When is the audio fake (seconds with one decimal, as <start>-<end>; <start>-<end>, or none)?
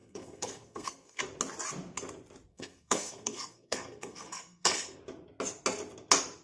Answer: 0.0-1.2; 2.5-5.0